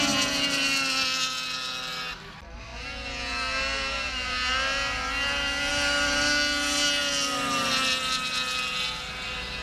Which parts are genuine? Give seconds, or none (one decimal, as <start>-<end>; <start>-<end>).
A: 0.0-9.6